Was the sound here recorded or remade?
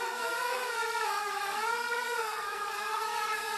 remade